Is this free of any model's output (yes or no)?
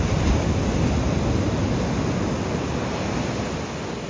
yes